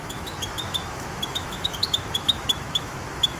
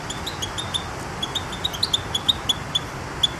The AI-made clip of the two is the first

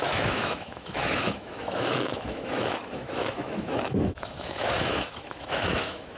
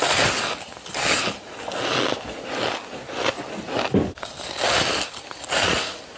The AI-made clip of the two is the first